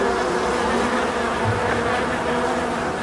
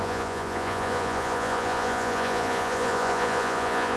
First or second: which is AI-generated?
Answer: second